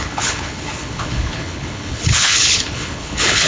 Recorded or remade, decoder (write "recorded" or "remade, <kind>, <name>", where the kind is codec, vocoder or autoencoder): remade, codec, HILCodec